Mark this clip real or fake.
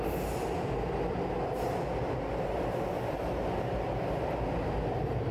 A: real